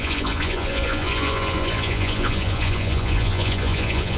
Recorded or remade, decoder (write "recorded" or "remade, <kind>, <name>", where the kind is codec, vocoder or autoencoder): remade, vocoder, Vocos